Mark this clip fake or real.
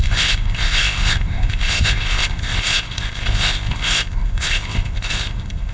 fake